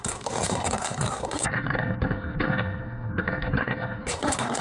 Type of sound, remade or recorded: remade